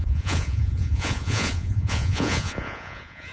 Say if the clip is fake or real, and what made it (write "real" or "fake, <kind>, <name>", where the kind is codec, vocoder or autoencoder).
fake, vocoder, Vocos